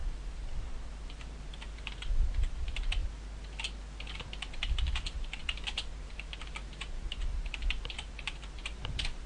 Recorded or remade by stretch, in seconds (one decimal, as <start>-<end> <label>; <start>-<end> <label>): 0.0-3.0 remade; 3.0-4.2 recorded; 4.2-9.3 remade